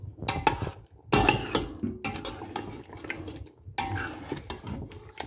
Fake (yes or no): no